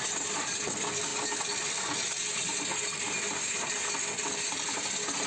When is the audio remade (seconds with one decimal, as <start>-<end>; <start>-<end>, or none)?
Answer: none